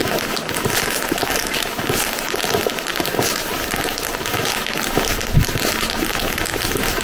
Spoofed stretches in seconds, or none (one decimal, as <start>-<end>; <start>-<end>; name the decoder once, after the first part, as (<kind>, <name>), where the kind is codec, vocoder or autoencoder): none